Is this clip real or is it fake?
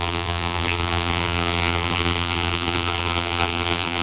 fake